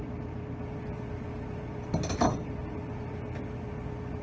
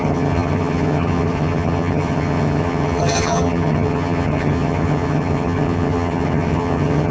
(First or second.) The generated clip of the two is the second